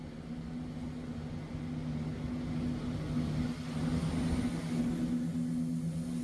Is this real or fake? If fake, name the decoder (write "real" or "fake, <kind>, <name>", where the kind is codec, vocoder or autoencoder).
real